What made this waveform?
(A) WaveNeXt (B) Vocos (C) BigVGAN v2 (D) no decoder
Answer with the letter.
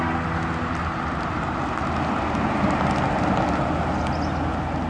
D